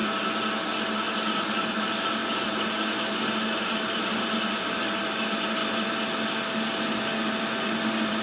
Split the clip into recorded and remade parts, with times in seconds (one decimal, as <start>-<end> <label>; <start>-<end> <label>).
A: 0.0-1.1 recorded; 1.1-5.6 remade; 5.6-7.4 recorded; 7.4-8.2 remade